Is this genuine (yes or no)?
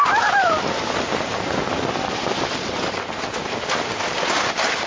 yes